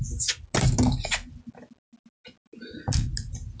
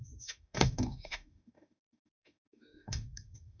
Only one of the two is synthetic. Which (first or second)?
second